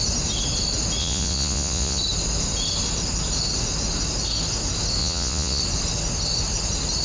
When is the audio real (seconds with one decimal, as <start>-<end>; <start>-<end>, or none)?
0.0-1.0; 2.0-5.0; 5.6-7.0